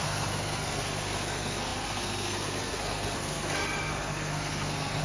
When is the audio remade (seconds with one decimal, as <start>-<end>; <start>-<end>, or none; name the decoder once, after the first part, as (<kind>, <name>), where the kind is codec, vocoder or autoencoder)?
0.0-5.0 (codec, SNAC)